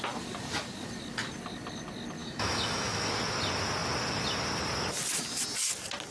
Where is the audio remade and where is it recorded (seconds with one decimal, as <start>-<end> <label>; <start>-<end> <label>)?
0.0-2.2 recorded; 2.2-3.1 remade; 3.1-6.1 recorded